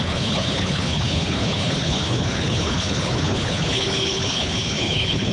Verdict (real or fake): fake